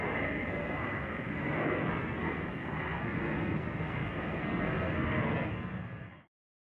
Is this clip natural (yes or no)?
no